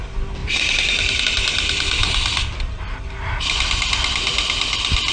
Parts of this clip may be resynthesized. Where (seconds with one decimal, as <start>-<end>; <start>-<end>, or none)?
0.4-1.2